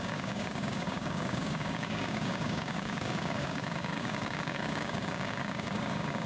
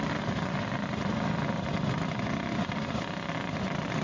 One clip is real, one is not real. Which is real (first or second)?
second